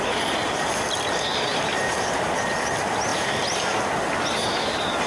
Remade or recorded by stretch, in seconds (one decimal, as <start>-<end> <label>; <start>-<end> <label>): 0.0-1.5 recorded; 1.5-2.1 remade; 2.1-3.1 recorded; 3.1-3.8 remade; 3.8-5.1 recorded